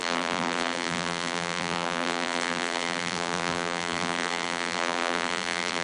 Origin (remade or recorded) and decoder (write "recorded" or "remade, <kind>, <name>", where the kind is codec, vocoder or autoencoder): remade, vocoder, BigVGAN v2